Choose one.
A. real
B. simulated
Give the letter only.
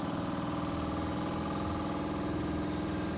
B